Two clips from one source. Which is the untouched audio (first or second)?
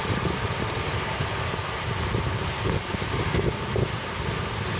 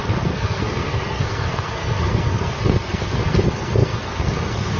first